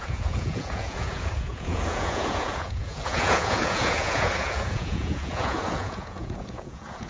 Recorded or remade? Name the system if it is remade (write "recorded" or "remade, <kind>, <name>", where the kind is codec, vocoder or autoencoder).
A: remade, vocoder, Vocos